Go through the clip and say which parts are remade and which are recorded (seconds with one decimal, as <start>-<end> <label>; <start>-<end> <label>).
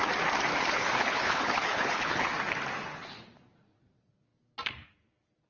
0.0-0.5 recorded; 0.5-2.3 remade; 2.3-5.5 recorded